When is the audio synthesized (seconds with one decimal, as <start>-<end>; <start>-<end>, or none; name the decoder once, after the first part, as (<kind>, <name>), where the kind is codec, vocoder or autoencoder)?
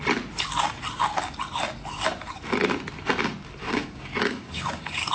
3.6-5.1 (codec, DAC)